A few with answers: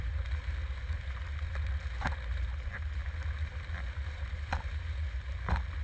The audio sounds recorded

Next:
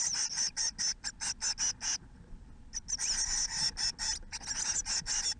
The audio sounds recorded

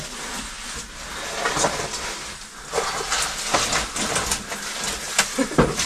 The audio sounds recorded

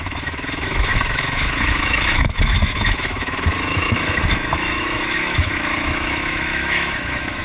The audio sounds remade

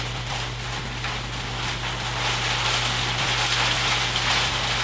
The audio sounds recorded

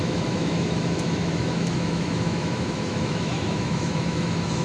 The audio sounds remade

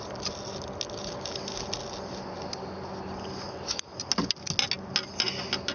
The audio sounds recorded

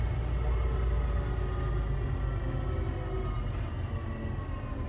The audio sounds recorded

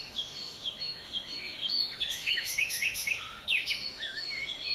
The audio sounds remade